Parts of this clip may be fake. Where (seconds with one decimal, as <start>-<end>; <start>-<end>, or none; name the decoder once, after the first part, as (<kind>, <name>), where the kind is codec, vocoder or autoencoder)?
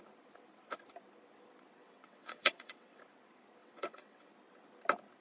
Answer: 1.8-3.0 (vocoder, WaveNeXt); 3.6-4.3